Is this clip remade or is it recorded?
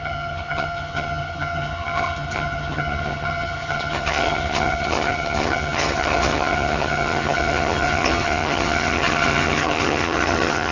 remade